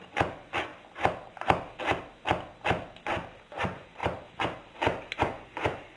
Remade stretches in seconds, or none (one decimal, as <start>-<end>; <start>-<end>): 0.0-0.7; 3.4-4.0; 5.2-6.0